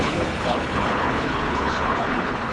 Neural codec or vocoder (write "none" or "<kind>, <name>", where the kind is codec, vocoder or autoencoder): codec, HILCodec